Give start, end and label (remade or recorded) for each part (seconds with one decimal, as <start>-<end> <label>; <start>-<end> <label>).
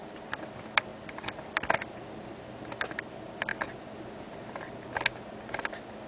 0.0-6.1 recorded